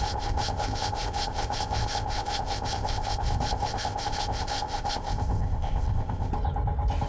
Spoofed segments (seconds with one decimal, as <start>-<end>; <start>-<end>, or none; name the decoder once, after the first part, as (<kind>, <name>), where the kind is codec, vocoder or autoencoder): 0.0-6.3 (codec, ZipCodec)